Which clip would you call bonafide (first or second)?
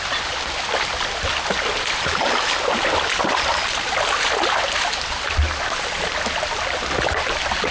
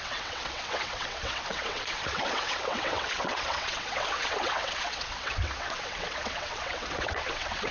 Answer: first